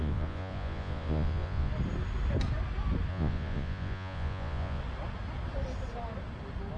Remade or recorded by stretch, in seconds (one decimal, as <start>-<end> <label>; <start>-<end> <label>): 0.0-1.7 remade; 1.7-3.1 recorded; 3.1-4.8 remade; 4.8-6.8 recorded